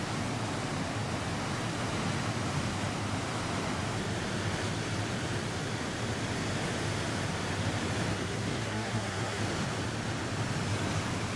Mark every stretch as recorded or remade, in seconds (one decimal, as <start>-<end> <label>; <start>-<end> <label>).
0.0-8.1 recorded; 8.1-9.4 remade; 9.4-11.4 recorded